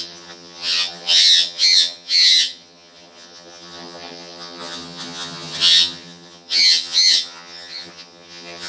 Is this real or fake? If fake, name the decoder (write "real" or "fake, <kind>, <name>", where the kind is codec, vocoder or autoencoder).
fake, vocoder, HiFi-GAN